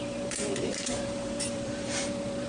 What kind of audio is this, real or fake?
fake